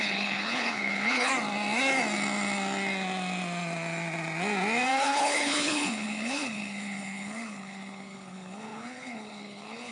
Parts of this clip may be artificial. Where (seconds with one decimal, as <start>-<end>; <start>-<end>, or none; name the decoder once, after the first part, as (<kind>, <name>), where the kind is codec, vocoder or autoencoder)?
0.0-1.3 (codec, HILCodec); 4.9-9.9